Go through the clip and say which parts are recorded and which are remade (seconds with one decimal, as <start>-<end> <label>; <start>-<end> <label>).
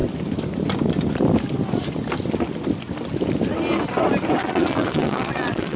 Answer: 0.0-4.4 recorded; 4.4-5.8 remade